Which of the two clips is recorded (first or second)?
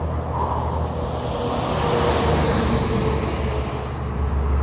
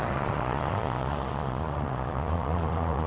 first